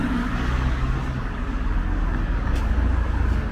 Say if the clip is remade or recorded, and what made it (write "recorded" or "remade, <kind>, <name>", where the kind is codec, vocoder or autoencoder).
remade, codec, DAC